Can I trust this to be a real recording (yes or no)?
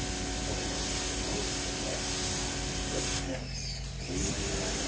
yes